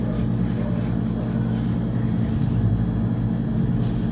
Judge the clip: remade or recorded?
recorded